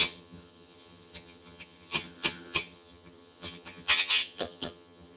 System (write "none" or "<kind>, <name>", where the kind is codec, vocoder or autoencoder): vocoder, HiFi-GAN